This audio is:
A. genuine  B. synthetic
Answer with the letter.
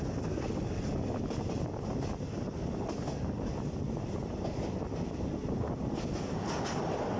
A